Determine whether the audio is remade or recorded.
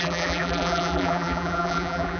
remade